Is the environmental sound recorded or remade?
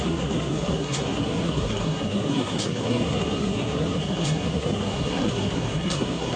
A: remade